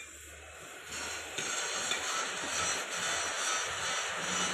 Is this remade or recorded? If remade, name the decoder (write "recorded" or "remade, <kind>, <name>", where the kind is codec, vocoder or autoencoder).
recorded